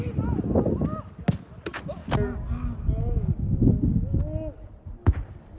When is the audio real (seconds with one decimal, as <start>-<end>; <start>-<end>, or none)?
0.0-5.6